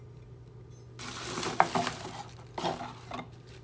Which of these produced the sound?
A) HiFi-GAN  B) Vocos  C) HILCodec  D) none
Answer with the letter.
D